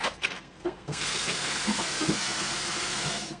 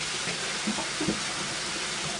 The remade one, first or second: first